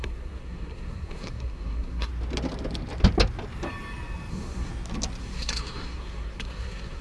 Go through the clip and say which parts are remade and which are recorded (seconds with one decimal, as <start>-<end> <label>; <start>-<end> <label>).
0.0-2.1 remade; 2.1-4.3 recorded; 4.3-4.7 remade; 4.7-5.2 recorded; 5.2-7.0 remade